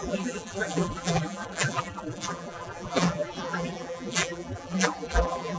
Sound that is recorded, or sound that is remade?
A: remade